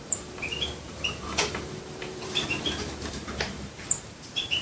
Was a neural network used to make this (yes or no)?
yes